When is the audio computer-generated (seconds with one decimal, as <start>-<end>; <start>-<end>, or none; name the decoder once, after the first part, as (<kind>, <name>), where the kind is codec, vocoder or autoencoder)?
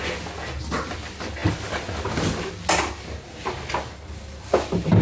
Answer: none